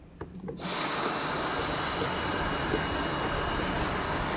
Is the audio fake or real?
real